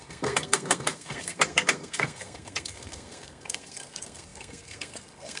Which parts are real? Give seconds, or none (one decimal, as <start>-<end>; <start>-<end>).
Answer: none